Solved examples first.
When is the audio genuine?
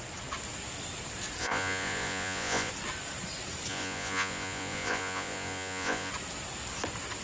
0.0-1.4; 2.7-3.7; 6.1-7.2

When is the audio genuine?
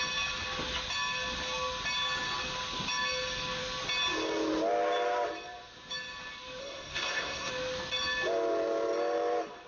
0.0-6.6; 7.5-9.7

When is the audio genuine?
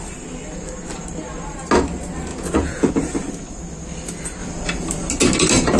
0.0-2.3; 2.9-5.8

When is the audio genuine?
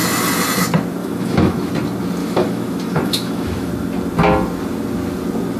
0.0-1.0; 1.7-2.2; 3.7-5.6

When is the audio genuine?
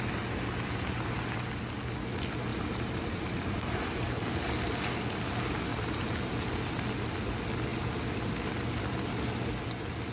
0.0-2.5; 4.5-5.7; 6.3-10.1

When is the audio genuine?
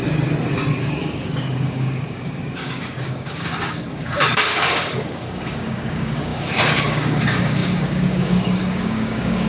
0.0-0.7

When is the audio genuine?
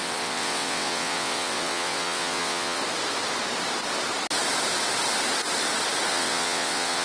2.8-6.1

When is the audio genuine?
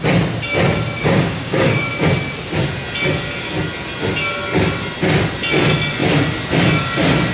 0.0-1.0; 1.9-7.3